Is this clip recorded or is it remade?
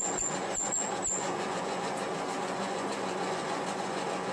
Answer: remade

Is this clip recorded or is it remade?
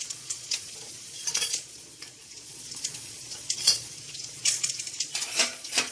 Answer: remade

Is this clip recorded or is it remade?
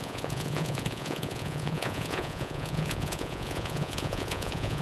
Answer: remade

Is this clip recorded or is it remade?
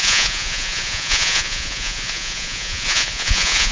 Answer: remade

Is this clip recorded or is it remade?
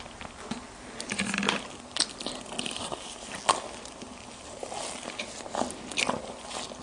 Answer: recorded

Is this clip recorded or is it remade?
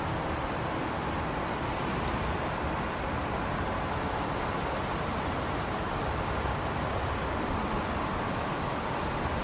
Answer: recorded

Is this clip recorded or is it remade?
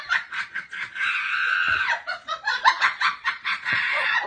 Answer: remade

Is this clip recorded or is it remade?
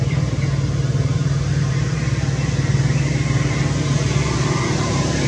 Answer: recorded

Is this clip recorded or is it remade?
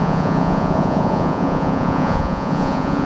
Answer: remade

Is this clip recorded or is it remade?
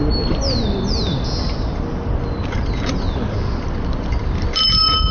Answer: recorded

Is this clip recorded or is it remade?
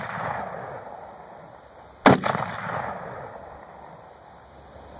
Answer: recorded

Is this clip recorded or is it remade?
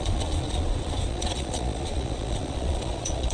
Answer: remade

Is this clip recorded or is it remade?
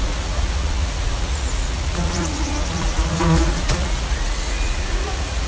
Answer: remade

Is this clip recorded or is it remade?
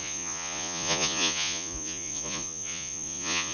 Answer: remade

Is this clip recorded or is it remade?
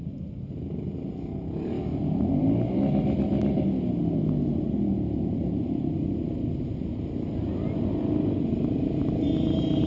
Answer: recorded